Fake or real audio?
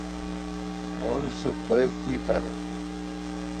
fake